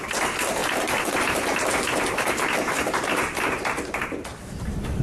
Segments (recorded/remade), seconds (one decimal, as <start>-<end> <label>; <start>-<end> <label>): 0.0-0.6 recorded; 0.6-3.6 remade; 3.6-4.3 recorded; 4.3-5.0 remade